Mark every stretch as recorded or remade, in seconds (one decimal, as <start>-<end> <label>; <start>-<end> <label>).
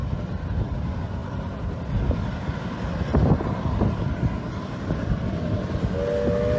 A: 0.0-6.6 recorded